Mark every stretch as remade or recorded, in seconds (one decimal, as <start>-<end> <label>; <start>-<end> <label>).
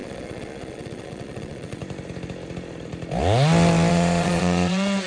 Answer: 0.0-1.8 remade; 1.8-3.9 recorded; 3.9-5.1 remade